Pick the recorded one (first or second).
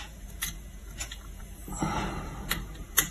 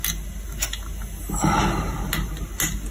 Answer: second